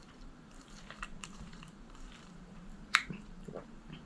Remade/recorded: remade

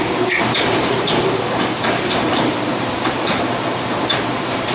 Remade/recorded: remade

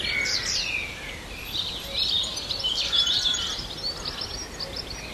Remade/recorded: remade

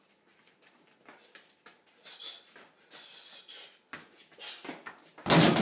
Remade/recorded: recorded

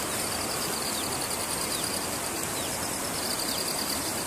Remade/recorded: recorded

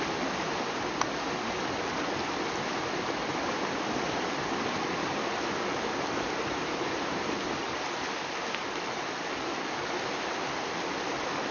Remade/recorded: recorded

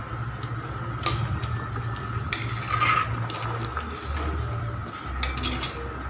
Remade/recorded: recorded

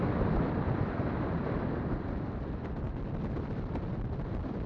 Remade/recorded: remade